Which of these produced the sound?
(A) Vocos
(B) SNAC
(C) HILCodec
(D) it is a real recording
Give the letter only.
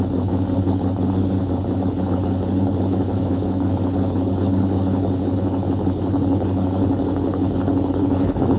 C